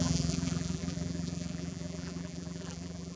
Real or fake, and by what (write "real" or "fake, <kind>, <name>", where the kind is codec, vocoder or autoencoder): fake, vocoder, BigVGAN v2